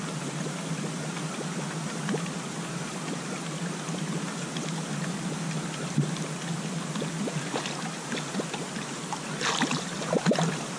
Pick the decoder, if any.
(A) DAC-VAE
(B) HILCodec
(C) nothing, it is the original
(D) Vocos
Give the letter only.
C